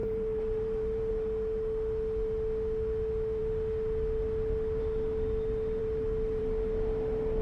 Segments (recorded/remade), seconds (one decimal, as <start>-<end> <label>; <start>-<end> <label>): 0.0-1.1 remade; 1.1-7.4 recorded